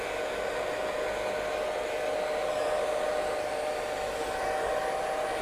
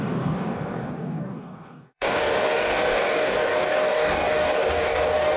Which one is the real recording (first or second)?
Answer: first